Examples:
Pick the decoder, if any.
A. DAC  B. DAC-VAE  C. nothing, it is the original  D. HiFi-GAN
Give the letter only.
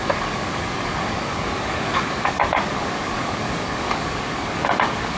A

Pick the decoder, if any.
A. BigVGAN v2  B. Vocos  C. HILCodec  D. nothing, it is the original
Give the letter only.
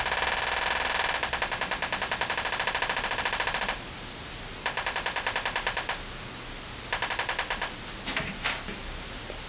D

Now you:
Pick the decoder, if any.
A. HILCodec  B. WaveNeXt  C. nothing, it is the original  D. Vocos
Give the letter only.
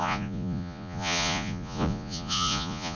D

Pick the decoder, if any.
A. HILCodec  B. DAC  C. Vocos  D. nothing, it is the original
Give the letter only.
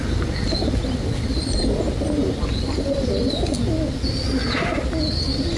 D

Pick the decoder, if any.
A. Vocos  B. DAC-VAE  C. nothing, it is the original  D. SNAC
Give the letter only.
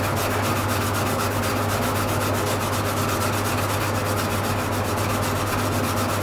C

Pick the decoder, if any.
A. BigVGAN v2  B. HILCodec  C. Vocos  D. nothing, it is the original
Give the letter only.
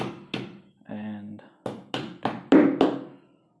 D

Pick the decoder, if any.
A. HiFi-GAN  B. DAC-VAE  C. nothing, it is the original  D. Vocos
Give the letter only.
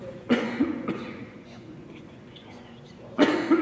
D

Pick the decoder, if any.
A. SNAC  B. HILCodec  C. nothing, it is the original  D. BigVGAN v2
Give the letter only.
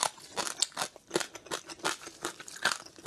C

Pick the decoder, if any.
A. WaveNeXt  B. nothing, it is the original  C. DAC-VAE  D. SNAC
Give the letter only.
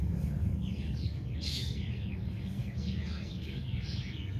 D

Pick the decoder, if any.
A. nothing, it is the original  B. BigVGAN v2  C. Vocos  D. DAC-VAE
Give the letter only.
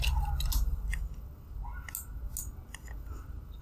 A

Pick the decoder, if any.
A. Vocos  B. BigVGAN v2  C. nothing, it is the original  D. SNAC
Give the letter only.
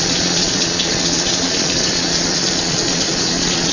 A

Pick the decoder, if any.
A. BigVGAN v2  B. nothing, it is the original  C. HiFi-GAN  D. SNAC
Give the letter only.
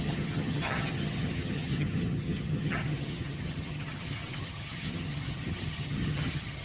C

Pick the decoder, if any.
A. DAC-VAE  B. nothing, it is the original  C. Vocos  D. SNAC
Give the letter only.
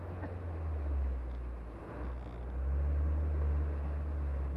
B